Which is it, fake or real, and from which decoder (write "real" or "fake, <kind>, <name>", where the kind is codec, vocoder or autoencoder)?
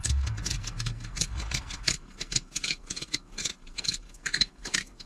fake, codec, SNAC